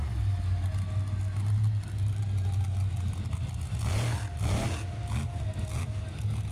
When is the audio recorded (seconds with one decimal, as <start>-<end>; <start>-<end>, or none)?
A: 0.0-6.5

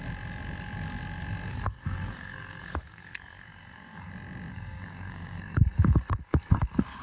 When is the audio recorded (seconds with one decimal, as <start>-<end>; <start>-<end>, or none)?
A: 0.0-1.5; 4.1-4.5

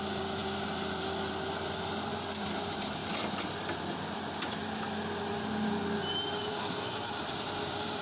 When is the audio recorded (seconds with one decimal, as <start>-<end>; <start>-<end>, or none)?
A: 0.0-6.5; 7.1-8.0

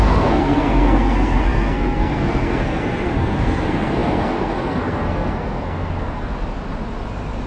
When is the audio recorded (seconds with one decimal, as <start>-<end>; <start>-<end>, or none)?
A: 6.3-7.5

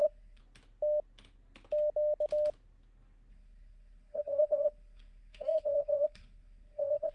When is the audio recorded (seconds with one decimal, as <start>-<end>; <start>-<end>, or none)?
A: 0.4-3.3

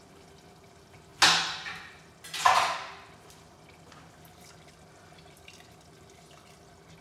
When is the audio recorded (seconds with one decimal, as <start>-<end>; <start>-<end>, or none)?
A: 0.0-7.0

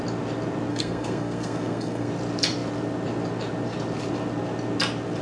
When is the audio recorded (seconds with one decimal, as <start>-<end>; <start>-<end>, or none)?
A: 0.0-0.7; 2.1-5.2

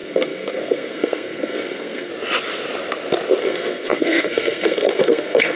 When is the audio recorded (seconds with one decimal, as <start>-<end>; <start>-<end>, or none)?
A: 2.1-3.4